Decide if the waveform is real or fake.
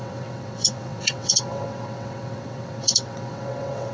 fake